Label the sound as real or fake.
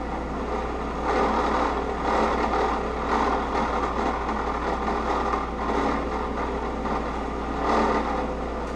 real